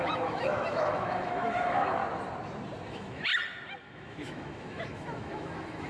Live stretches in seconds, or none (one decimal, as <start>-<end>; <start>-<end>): 2.0-2.9; 3.3-3.8